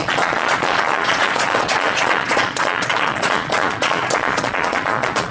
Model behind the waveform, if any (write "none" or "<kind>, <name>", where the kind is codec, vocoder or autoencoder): vocoder, Vocos